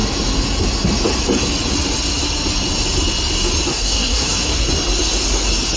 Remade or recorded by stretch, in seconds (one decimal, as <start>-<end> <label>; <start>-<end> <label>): 0.0-3.7 recorded; 3.7-4.7 remade; 4.7-5.8 recorded